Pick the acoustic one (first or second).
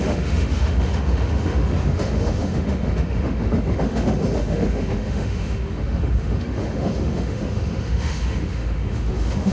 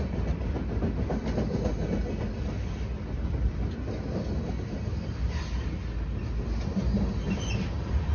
second